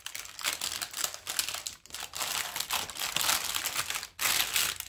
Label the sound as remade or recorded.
recorded